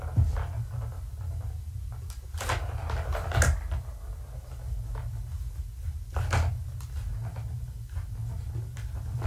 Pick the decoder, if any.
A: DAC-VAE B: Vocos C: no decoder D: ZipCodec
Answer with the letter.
C